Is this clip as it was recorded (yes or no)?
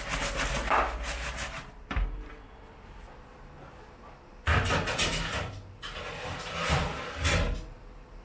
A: yes